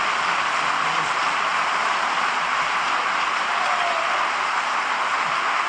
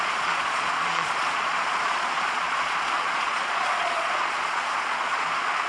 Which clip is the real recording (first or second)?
first